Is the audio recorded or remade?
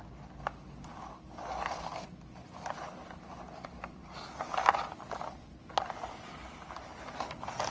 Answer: recorded